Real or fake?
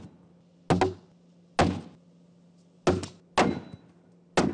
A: real